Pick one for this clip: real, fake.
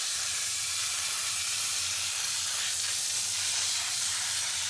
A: fake